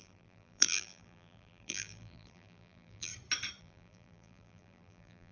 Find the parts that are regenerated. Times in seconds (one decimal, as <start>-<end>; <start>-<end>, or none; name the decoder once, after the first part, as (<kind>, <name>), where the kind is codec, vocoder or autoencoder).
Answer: 0.0-3.1 (vocoder, BigVGAN v2); 3.6-5.3